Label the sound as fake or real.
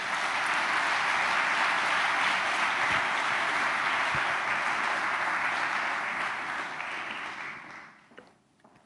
real